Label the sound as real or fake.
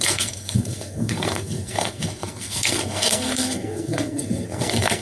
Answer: fake